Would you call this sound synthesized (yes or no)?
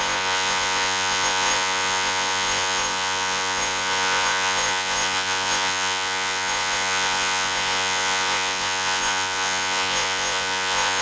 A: yes